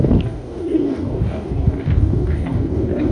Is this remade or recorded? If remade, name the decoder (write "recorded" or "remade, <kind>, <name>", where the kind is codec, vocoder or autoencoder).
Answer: remade, codec, DAC